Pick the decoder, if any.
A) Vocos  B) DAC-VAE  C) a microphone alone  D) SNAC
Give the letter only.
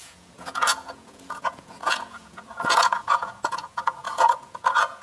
A